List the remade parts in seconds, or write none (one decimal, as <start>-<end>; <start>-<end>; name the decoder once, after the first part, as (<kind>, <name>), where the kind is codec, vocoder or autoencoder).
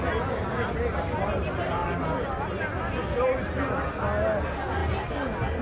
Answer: none